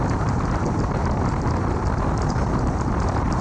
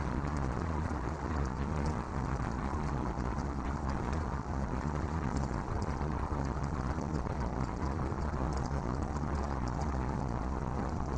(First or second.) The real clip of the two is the first